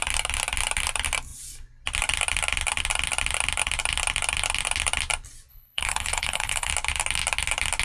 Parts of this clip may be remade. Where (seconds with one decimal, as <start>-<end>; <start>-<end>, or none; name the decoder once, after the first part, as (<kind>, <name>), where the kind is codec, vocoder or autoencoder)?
5.5-6.7 (codec, HILCodec)